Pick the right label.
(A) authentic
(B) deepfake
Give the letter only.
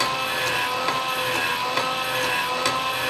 A